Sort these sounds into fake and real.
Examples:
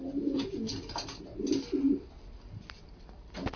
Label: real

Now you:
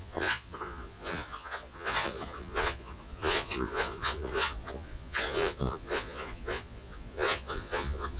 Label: fake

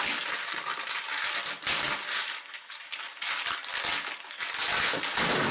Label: real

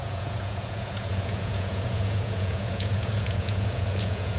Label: fake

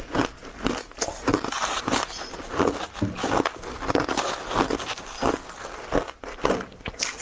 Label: real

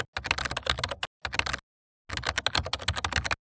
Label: real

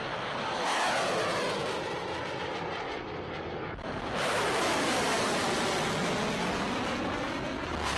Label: real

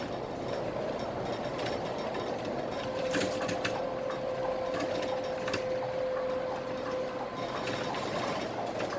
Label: real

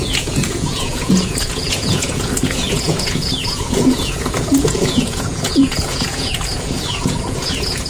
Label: fake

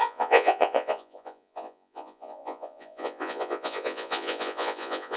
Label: fake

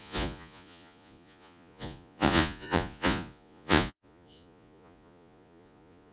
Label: fake